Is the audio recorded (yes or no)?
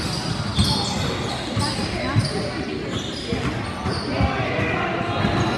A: yes